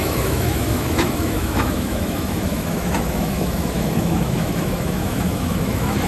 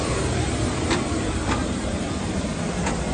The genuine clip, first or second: second